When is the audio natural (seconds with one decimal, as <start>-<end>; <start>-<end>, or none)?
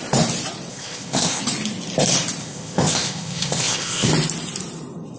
0.0-0.7; 1.4-2.4; 4.1-5.2